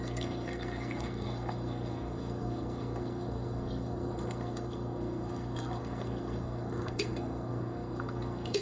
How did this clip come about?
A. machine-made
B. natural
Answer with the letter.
A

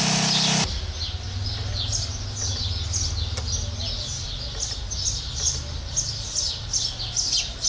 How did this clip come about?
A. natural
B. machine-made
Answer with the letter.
A